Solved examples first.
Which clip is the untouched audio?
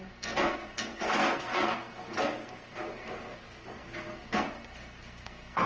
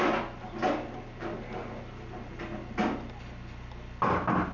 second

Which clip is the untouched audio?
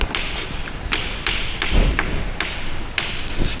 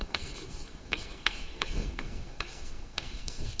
first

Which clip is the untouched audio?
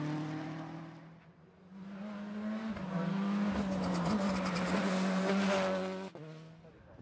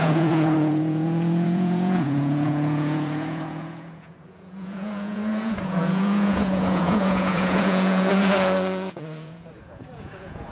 first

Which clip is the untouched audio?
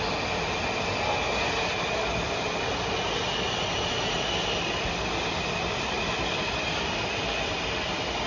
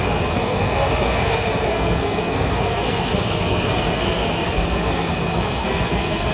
first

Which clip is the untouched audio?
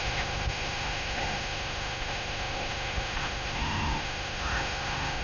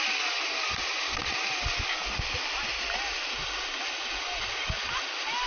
second